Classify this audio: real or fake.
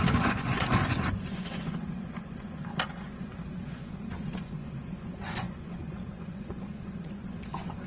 fake